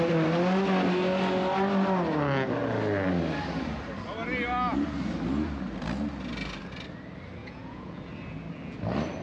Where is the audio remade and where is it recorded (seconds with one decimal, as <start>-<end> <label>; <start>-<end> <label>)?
0.0-7.4 recorded; 7.4-8.0 remade; 8.0-9.2 recorded